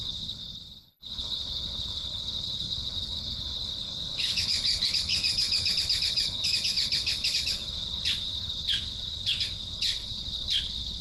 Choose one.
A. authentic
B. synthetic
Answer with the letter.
B